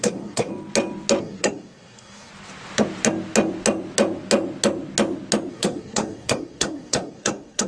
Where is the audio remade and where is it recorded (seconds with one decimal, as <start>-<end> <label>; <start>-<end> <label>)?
0.0-0.5 remade; 0.5-1.2 recorded; 1.2-2.3 remade; 2.3-5.5 recorded; 5.5-7.7 remade